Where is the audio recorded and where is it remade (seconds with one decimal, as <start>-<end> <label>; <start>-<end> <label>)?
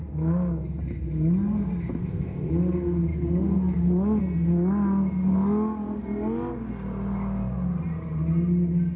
0.0-2.0 recorded; 2.0-2.5 remade; 2.5-9.0 recorded